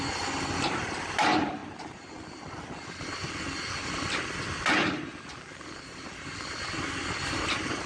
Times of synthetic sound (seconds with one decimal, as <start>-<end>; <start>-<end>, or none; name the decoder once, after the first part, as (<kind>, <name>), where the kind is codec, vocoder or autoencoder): none

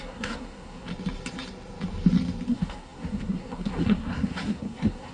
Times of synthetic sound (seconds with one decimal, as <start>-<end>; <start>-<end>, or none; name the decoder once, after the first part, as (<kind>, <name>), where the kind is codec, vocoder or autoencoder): 0.0-0.9 (codec, SNAC); 2.5-5.1

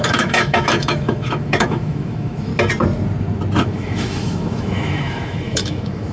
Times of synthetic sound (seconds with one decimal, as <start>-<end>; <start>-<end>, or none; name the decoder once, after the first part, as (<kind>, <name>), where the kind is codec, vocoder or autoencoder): 0.0-2.5 (autoencoder, DAC-VAE); 3.6-6.1

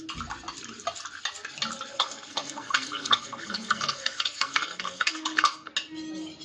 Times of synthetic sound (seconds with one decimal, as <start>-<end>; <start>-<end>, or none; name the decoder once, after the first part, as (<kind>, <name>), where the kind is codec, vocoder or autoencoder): 1.9-5.7 (codec, SNAC)

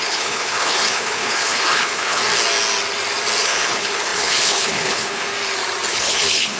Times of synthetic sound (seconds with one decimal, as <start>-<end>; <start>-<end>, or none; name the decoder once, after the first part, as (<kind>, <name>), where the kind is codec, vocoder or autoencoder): 0.0-2.2 (codec, HILCodec); 3.4-5.3; 5.9-6.6

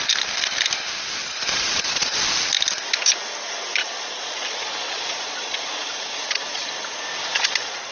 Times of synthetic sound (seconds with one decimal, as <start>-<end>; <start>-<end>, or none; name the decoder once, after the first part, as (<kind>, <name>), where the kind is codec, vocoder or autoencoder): 1.2-2.2 (vocoder, Vocos); 3.8-6.7; 7.2-7.9

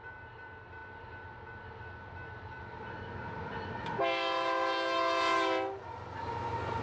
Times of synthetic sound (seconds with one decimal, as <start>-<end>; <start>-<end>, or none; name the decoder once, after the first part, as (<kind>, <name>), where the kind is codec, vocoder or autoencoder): none